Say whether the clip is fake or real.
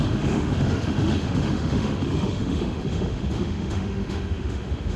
fake